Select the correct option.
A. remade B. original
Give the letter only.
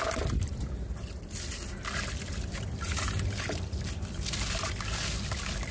B